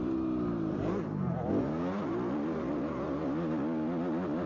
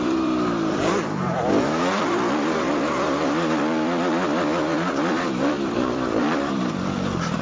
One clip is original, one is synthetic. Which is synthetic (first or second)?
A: second